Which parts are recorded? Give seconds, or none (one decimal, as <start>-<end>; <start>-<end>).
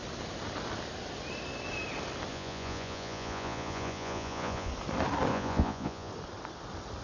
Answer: 0.0-2.3; 4.7-5.3; 6.1-7.0